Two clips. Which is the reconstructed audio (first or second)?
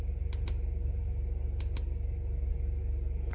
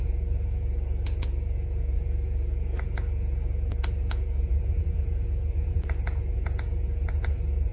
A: second